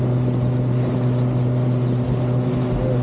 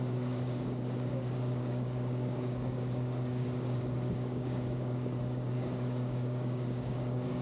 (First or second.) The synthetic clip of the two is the second